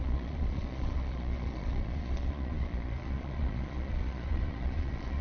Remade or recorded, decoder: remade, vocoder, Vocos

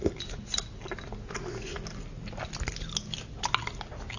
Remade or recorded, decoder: recorded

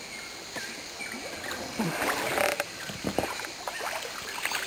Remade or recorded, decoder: recorded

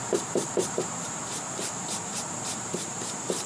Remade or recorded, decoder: remade, vocoder, BigVGAN v2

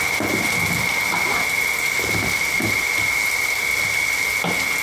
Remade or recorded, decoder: recorded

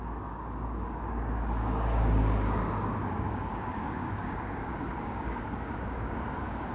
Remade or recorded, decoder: remade, codec, DAC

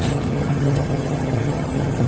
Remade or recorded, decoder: remade, vocoder, HiFi-GAN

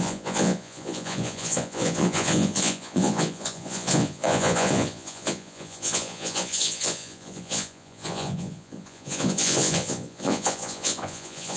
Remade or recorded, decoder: remade, vocoder, Vocos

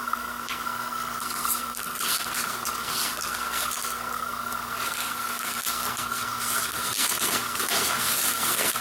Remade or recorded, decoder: remade, codec, SNAC